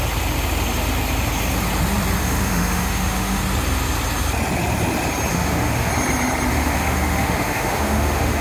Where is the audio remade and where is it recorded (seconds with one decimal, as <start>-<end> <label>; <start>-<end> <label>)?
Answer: 0.0-2.2 recorded; 2.2-3.4 remade; 3.4-5.3 recorded; 5.3-5.9 remade; 5.9-6.5 recorded; 6.5-8.4 remade